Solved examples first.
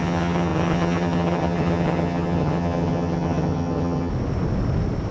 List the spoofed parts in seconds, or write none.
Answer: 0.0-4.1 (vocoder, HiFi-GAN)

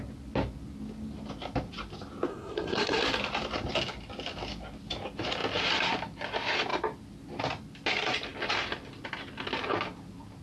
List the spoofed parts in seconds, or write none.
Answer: 2.3-3.0 (codec, SNAC)

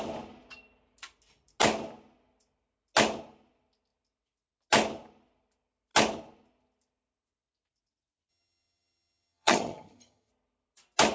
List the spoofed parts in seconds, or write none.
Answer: 8.3-10.3 (vocoder, HiFi-GAN)

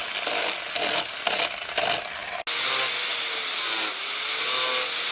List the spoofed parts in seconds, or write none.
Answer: none

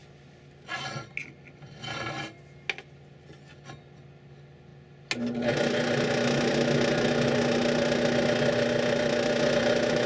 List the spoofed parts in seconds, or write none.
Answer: none

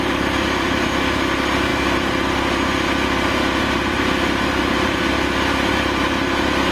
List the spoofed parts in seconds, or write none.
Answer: none

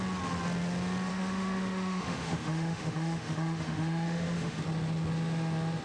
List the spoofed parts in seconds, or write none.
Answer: 1.1-4.6 (autoencoder, DAC-VAE)

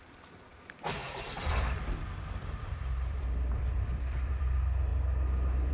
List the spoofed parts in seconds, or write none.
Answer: 1.0-4.4 (vocoder, BigVGAN v2)